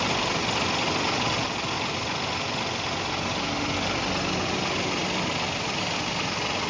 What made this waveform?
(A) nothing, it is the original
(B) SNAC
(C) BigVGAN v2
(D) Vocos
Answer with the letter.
A